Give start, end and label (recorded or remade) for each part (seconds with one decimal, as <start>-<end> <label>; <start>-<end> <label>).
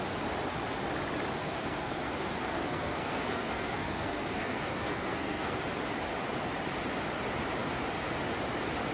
0.0-1.4 recorded; 1.4-5.6 remade; 5.6-8.9 recorded